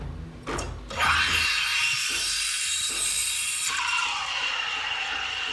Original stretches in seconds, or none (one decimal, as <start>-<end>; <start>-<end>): 0.0-1.7; 4.6-5.5